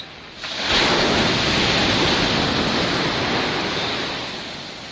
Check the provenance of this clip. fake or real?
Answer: real